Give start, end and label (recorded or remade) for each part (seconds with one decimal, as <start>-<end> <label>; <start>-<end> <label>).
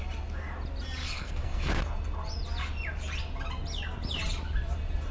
0.0-1.0 recorded; 1.0-1.7 remade; 1.7-5.1 recorded